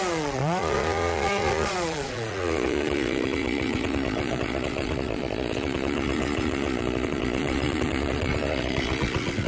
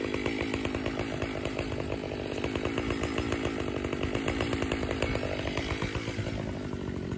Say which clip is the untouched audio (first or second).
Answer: second